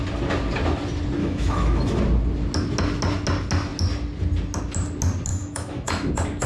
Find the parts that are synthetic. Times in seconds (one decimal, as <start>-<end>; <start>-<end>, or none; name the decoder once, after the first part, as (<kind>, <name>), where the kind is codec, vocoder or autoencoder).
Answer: 1.2-2.0 (autoencoder, DAC-VAE); 5.3-6.1

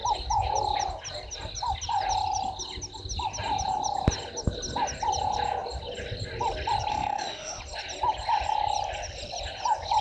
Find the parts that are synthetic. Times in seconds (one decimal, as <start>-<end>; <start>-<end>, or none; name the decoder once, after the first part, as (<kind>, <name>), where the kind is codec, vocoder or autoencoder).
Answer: 6.9-7.6 (autoencoder, DAC-VAE)

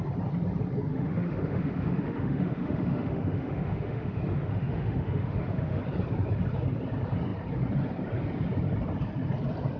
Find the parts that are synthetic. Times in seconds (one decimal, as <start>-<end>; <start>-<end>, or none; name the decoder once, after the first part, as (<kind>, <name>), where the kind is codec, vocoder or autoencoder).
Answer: 0.9-5.8 (autoencoder, DAC-VAE)

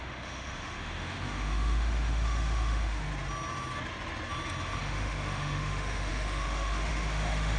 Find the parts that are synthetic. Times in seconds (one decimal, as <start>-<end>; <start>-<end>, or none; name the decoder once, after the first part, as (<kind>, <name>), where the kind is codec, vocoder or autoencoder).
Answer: 0.0-3.1 (autoencoder, DAC-VAE); 4.8-7.6

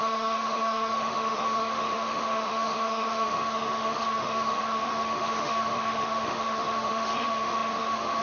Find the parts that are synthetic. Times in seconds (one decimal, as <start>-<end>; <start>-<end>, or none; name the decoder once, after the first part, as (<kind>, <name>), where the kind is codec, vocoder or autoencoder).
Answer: 0.0-8.2 (autoencoder, DAC-VAE)

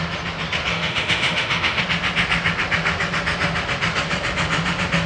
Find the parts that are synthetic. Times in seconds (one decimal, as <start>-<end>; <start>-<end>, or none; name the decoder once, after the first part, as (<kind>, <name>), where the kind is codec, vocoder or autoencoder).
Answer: 0.7-1.8 (autoencoder, DAC-VAE)